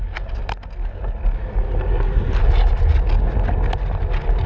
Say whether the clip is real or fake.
real